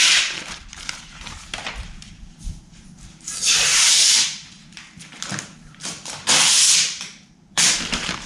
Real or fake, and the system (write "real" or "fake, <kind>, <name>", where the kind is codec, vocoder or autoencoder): fake, vocoder, BigVGAN v2